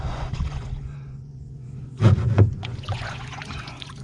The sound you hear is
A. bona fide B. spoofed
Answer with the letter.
B